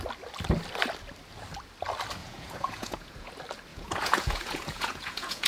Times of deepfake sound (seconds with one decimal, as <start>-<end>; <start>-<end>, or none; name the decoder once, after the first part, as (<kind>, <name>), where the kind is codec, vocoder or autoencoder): 2.2-3.3 (vocoder, Vocos); 3.7-5.5